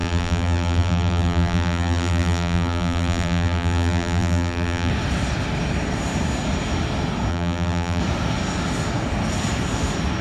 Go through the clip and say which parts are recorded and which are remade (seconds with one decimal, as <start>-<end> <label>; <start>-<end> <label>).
0.0-4.9 remade; 4.9-7.3 recorded; 7.3-8.0 remade; 8.0-10.2 recorded